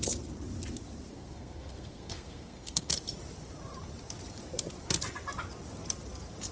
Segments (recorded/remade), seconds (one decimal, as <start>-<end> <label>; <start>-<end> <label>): 0.0-1.1 recorded; 1.1-2.9 remade; 2.9-6.5 recorded